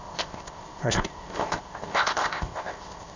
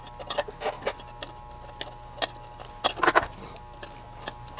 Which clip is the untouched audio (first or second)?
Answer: second